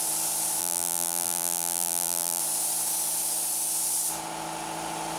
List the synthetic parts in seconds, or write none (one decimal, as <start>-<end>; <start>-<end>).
0.6-2.4